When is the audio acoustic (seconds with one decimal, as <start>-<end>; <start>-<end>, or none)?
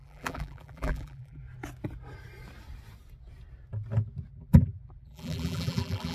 1.4-4.3